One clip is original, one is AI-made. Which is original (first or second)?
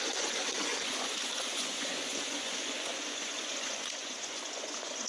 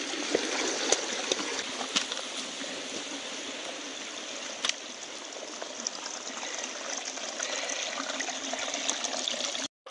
second